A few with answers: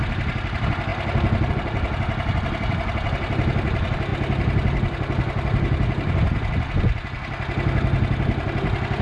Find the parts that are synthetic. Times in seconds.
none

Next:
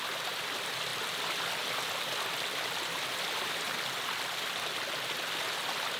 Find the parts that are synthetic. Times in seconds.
none

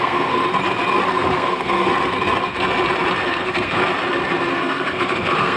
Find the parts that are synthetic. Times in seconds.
0.0-0.4 (codec, SNAC); 1.1-1.9; 3.3-3.8; 4.5-5.6